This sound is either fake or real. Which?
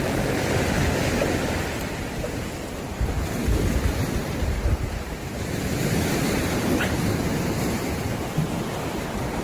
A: real